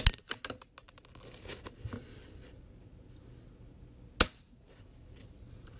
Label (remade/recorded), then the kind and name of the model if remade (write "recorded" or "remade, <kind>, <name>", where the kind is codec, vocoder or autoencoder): recorded